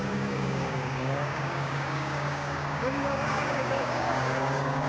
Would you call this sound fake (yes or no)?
yes